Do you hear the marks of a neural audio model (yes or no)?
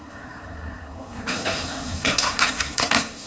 yes